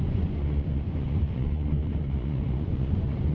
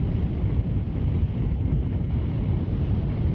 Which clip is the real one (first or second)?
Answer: second